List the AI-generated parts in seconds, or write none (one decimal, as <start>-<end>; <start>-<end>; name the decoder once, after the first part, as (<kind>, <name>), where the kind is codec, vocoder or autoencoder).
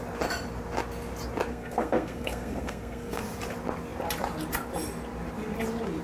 1.5-3.2 (codec, SNAC)